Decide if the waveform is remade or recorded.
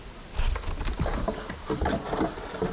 recorded